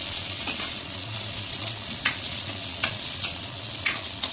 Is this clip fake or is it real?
fake